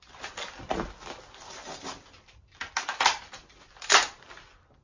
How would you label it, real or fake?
real